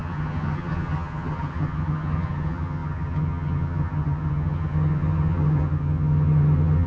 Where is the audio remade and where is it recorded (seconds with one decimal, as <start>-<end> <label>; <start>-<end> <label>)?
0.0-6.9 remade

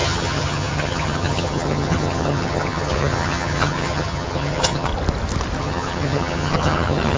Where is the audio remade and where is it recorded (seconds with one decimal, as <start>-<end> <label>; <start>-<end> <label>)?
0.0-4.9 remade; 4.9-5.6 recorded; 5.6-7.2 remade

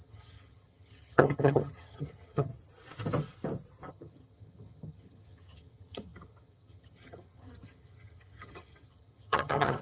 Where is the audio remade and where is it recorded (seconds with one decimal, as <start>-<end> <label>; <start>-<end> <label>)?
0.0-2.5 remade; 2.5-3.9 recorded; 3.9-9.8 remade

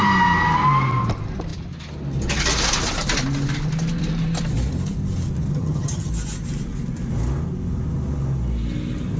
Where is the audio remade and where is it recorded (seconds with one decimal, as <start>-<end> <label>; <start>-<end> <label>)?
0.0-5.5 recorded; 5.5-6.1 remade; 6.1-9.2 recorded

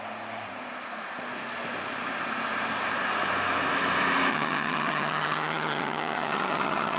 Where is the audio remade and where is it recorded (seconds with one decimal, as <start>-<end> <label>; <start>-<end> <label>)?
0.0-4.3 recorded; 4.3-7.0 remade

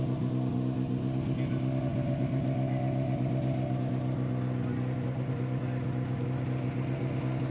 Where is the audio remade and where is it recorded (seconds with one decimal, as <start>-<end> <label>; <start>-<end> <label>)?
0.0-7.5 recorded

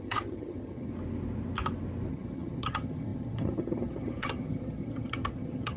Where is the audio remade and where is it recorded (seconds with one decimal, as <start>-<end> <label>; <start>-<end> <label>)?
0.0-0.9 remade; 0.9-2.1 recorded; 2.1-5.8 remade